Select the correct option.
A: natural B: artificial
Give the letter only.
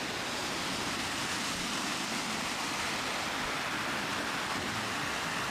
A